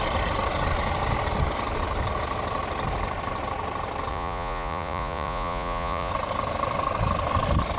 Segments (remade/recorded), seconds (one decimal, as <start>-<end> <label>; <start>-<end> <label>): 0.0-4.1 recorded; 4.1-6.1 remade; 6.1-7.8 recorded